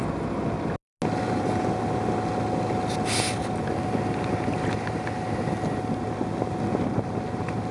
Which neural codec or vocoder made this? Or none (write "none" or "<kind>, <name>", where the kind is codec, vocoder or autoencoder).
none